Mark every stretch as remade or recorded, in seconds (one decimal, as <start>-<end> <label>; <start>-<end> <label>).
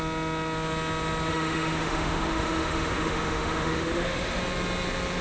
0.0-1.3 recorded; 1.3-4.4 remade; 4.4-5.2 recorded